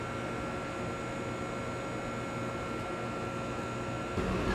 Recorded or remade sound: recorded